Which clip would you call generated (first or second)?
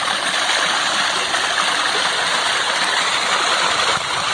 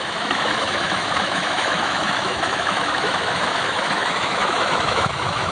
second